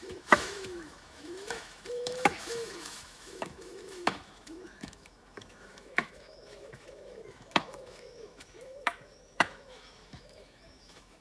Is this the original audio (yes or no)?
no